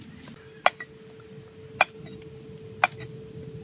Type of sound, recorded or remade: recorded